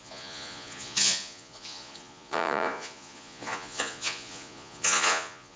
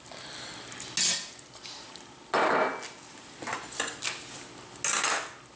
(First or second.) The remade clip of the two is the first